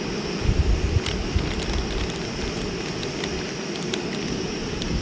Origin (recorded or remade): recorded